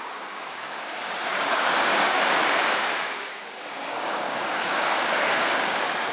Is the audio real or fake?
fake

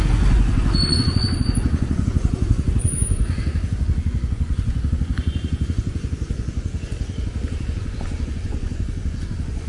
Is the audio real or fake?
fake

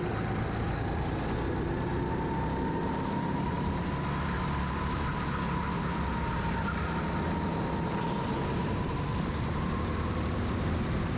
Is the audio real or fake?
real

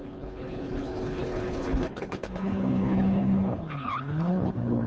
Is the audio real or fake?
fake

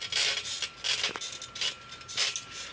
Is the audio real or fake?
real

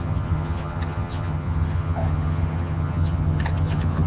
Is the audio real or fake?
fake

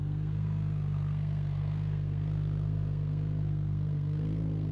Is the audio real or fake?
fake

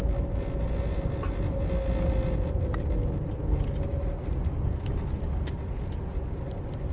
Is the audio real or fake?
real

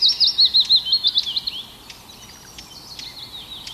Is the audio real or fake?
real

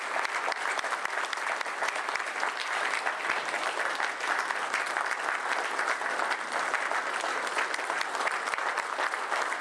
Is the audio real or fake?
real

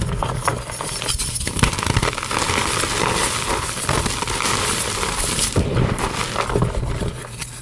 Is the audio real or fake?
real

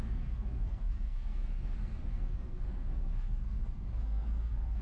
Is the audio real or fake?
fake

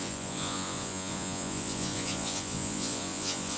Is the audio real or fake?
fake